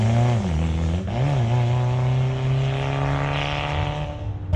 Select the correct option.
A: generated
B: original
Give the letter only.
B